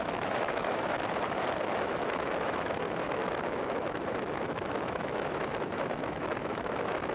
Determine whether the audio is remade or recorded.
remade